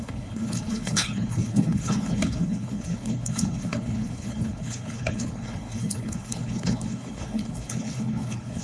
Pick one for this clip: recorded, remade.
remade